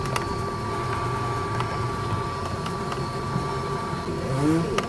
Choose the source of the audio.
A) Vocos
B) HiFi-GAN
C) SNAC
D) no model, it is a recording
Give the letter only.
D